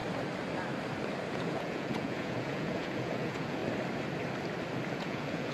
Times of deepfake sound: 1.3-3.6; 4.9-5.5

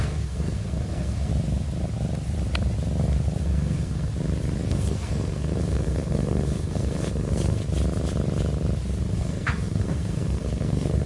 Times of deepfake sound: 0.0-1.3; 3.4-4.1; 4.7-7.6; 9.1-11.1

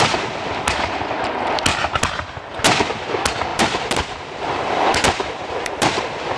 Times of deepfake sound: 3.5-6.0

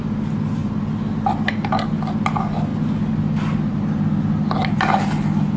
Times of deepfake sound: none